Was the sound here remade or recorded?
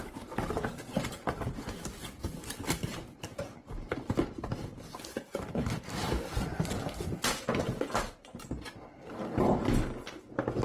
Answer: recorded